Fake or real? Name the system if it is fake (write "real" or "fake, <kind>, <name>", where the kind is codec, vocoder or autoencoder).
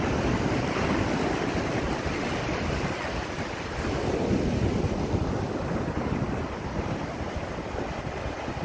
real